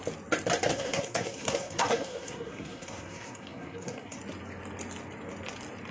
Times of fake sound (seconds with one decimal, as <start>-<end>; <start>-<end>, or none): 0.7-4.2